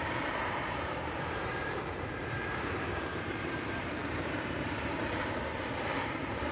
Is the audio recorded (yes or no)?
no